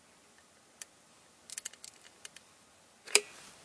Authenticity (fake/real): real